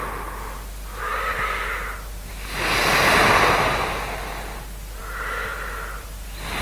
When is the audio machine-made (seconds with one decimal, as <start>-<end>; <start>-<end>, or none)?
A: none